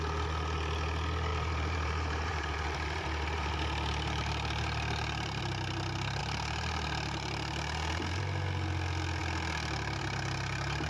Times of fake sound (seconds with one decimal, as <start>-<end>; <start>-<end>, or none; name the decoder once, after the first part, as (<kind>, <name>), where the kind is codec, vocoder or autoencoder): 1.3-5.4 (vocoder, BigVGAN v2); 6.2-8.2